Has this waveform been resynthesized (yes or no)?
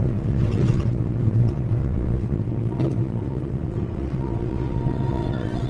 yes